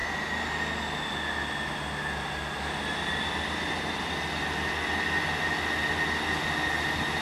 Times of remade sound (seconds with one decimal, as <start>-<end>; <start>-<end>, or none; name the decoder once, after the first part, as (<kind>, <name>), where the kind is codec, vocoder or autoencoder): none